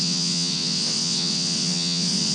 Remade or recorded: remade